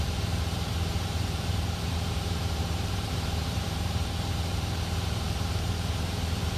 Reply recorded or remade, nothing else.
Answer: remade